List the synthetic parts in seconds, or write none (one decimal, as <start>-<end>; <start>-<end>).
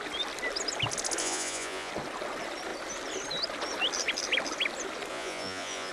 1.2-1.9; 5.1-5.9